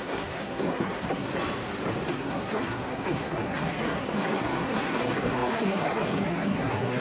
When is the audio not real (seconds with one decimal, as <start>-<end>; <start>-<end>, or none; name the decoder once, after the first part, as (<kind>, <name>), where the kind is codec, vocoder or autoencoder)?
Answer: 0.0-1.3 (codec, SNAC); 2.1-7.0